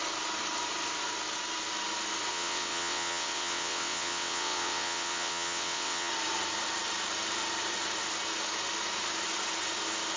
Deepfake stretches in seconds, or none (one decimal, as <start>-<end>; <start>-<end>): 2.3-6.1